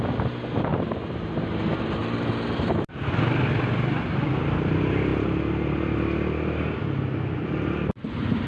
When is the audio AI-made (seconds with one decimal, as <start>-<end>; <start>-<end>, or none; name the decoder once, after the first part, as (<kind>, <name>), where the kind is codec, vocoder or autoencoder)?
0.7-1.6 (vocoder, BigVGAN v2); 2.0-2.9